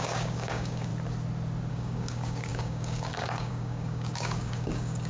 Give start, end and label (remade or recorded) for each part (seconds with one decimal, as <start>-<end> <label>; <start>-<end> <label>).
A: 0.0-0.9 remade; 0.9-1.7 recorded; 1.7-5.1 remade